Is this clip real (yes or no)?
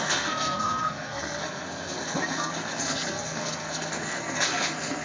no